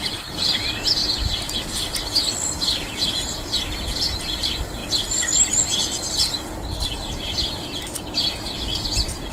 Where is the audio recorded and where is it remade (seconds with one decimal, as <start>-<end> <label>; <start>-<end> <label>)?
0.0-9.3 recorded